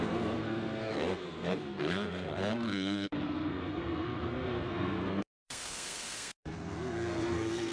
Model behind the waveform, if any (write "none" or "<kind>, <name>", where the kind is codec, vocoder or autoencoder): codec, SNAC